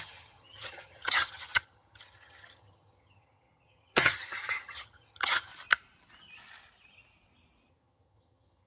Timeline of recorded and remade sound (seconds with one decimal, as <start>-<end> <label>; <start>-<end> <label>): 0.0-5.5 remade; 5.5-7.7 recorded; 7.7-8.7 remade